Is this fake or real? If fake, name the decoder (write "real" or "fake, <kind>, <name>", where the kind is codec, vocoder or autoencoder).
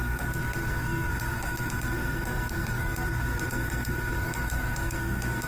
fake, codec, SNAC